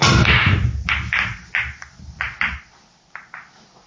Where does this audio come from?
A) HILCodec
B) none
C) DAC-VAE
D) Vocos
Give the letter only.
B